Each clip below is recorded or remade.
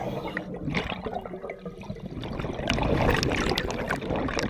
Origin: recorded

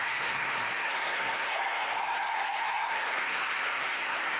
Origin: remade